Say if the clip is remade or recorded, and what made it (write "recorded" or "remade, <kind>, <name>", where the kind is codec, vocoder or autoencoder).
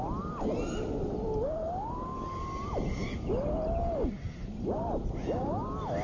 recorded